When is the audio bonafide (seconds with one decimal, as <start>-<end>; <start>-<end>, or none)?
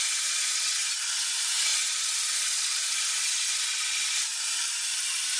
0.0-5.4